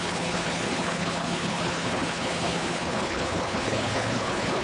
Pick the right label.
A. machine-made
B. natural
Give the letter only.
A